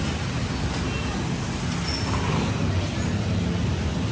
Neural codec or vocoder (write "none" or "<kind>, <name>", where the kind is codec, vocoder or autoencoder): none